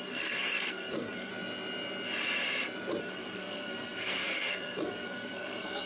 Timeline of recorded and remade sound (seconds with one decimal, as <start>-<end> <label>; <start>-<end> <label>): 0.0-1.3 remade; 1.3-3.0 recorded; 3.0-5.9 remade